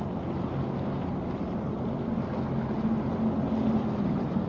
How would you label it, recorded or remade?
recorded